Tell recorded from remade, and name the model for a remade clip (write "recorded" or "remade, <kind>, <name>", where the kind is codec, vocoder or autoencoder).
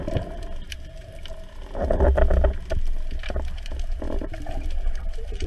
recorded